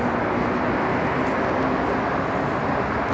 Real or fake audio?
real